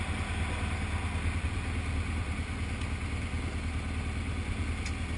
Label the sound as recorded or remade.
recorded